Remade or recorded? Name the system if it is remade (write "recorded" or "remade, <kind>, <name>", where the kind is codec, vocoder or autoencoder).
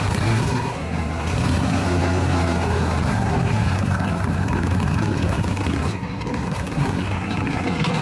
remade, codec, SNAC